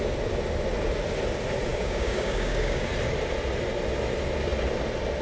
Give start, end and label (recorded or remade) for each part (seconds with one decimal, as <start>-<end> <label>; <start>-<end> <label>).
0.0-1.7 recorded; 1.7-2.9 remade; 2.9-5.2 recorded